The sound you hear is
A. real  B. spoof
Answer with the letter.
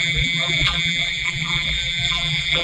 B